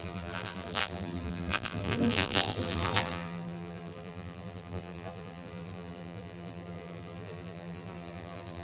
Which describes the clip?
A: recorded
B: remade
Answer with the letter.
B